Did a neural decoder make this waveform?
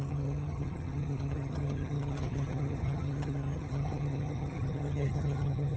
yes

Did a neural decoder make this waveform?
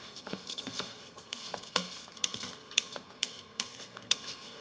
yes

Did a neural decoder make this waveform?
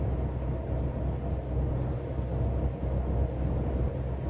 no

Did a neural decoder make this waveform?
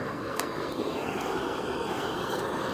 yes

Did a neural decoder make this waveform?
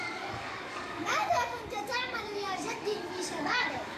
yes